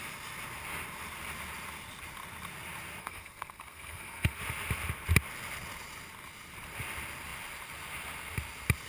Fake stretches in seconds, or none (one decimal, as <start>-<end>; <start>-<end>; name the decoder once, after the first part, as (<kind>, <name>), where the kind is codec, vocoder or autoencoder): 3.0-4.4 (codec, SNAC)